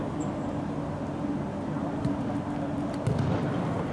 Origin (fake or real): real